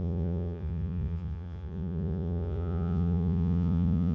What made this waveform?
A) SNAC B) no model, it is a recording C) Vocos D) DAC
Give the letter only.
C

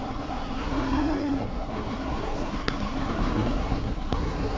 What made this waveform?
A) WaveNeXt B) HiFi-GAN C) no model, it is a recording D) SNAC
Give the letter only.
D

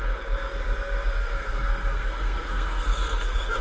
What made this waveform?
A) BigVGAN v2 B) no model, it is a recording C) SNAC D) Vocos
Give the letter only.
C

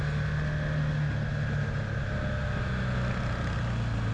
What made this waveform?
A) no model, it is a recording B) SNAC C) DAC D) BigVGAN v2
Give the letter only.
A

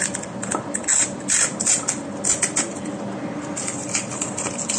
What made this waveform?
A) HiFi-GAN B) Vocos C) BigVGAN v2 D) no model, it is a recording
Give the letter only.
D